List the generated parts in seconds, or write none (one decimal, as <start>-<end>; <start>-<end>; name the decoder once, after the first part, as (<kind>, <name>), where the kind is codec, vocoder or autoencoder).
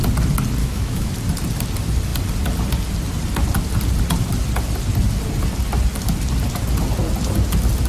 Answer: 0.6-1.1 (autoencoder, DAC-VAE)